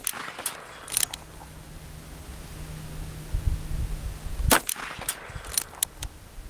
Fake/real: real